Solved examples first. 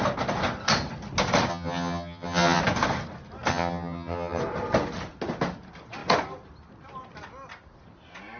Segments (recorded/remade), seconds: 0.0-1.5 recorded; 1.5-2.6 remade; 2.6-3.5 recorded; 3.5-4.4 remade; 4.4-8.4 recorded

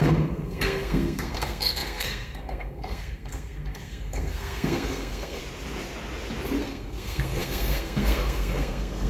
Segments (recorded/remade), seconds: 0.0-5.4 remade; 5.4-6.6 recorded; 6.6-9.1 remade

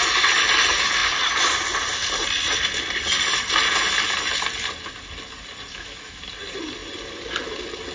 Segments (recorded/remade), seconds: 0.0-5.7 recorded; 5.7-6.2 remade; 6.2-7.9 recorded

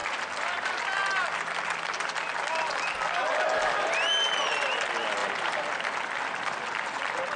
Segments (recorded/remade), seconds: 0.0-7.4 recorded

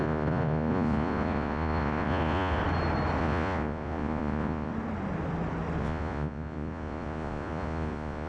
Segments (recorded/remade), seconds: 0.0-2.6 remade; 2.6-3.2 recorded; 3.2-4.7 remade; 4.7-5.8 recorded; 5.8-8.3 remade